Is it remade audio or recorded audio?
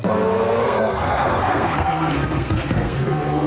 remade